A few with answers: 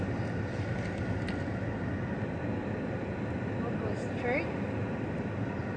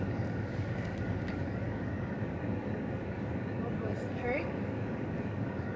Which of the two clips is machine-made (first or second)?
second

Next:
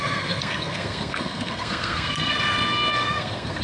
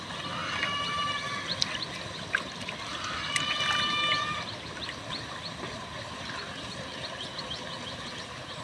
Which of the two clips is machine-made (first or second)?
first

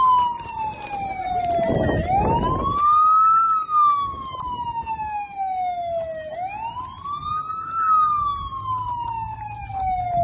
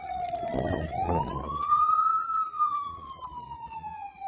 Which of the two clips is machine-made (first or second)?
second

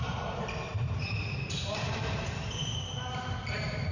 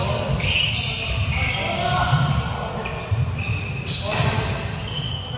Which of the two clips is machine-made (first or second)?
first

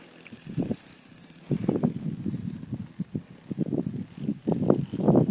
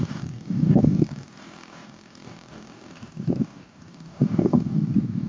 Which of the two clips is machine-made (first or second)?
second